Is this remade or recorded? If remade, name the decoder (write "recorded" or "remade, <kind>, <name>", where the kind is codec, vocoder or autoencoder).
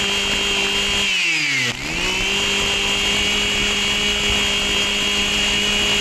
recorded